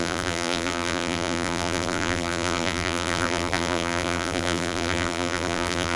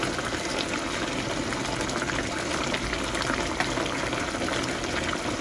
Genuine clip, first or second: second